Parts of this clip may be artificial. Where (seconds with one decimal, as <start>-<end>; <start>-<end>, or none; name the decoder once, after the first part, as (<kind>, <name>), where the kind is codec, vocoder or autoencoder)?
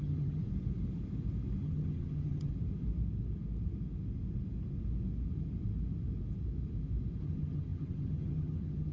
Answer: 0.0-0.4 (vocoder, HiFi-GAN); 1.6-2.5; 7.2-8.9